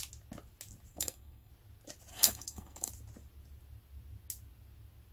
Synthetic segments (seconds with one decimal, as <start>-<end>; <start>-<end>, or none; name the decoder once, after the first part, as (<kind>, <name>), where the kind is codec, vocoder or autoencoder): 0.9-1.5 (codec, SNAC); 2.1-2.9